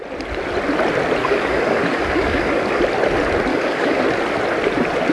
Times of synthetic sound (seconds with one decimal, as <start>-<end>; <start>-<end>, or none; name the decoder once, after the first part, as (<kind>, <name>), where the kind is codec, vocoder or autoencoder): 1.2-2.8 (codec, DAC); 3.5-4.0